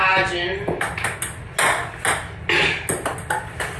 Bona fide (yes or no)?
yes